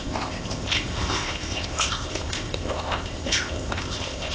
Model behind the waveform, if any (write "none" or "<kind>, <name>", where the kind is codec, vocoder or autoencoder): codec, ZipCodec